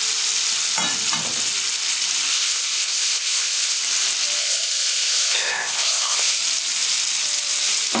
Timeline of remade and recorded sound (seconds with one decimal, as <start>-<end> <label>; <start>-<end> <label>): 0.0-2.3 recorded; 2.3-3.8 remade; 3.8-4.4 recorded; 4.4-6.4 remade; 6.4-8.0 recorded